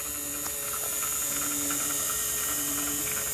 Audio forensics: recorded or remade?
recorded